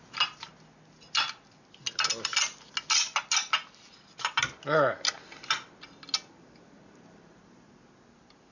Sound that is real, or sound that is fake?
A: real